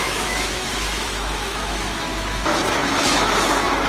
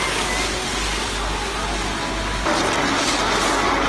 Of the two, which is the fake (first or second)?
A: first